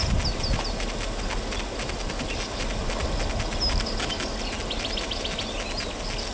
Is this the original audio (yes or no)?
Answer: yes